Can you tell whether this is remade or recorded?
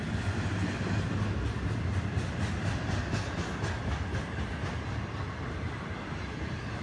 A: recorded